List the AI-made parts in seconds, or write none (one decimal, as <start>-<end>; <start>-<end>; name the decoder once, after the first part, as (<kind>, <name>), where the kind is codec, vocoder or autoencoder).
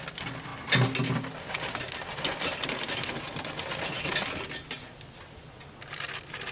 none